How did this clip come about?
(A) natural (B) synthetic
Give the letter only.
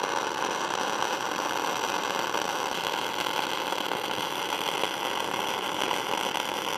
A